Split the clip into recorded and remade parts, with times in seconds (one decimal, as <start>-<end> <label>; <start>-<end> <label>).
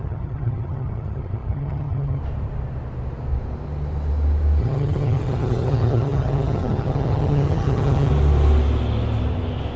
0.0-2.2 remade; 2.2-4.6 recorded; 4.6-8.1 remade; 8.1-9.8 recorded